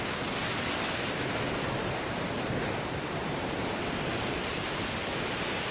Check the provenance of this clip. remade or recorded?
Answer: recorded